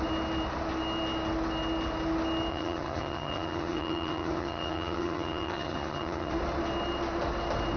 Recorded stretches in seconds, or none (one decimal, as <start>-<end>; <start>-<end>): 0.0-2.5; 6.3-7.8